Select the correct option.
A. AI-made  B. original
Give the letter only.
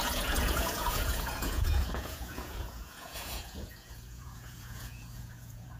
A